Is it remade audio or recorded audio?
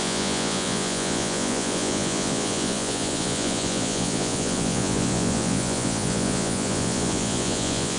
remade